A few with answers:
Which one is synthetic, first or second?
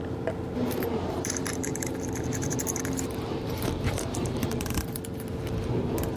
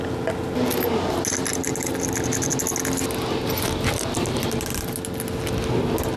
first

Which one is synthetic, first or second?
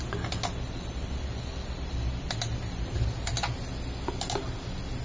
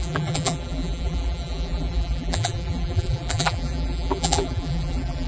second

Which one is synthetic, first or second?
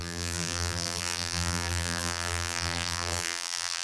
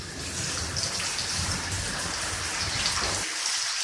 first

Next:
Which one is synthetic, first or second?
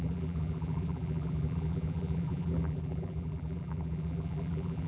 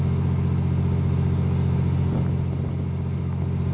first